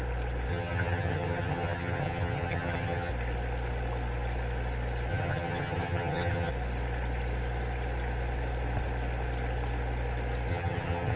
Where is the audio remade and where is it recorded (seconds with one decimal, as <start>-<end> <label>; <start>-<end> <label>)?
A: 0.0-0.5 recorded; 0.5-3.1 remade; 3.1-5.1 recorded; 5.1-6.5 remade; 6.5-10.5 recorded; 10.5-11.2 remade